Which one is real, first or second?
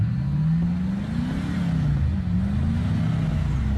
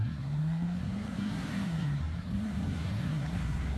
first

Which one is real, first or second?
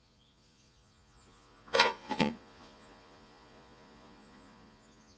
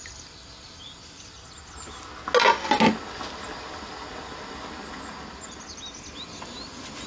second